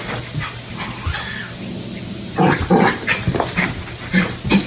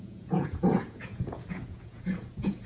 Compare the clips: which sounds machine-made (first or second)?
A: second